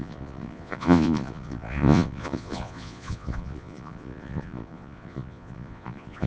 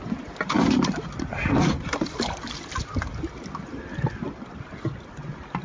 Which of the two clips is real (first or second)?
second